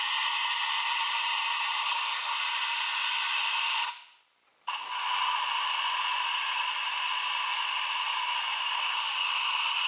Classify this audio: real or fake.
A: fake